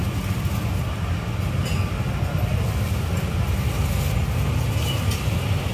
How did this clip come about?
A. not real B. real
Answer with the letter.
B